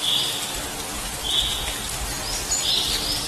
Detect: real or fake real